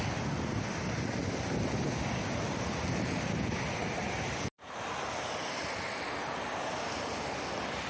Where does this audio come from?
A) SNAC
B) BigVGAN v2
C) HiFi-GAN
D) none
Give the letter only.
D